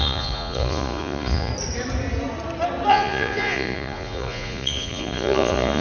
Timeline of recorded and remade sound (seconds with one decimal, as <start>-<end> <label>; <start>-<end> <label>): 0.0-1.5 remade; 1.5-2.9 recorded; 2.9-5.8 remade